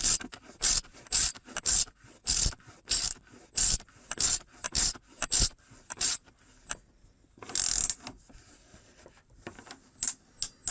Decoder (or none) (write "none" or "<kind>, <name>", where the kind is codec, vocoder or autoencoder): none